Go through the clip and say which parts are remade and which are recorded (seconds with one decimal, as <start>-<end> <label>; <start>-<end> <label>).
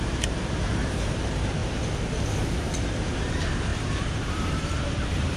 0.0-1.6 remade; 1.6-2.9 recorded; 2.9-5.4 remade